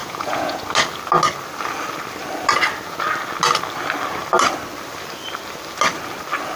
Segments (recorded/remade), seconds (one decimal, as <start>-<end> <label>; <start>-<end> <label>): 0.0-0.6 remade; 0.6-6.6 recorded